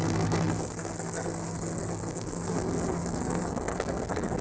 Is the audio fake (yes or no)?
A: yes